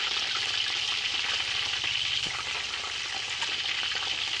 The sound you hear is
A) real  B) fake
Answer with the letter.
A